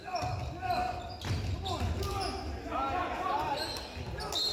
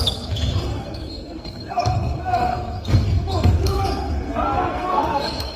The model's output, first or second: second